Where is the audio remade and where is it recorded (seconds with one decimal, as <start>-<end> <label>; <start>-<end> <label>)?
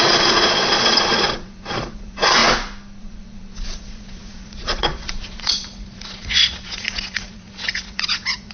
0.0-2.4 remade; 2.4-3.0 recorded; 3.0-8.5 remade